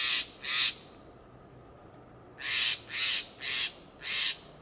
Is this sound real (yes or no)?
yes